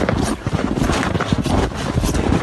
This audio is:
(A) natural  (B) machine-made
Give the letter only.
A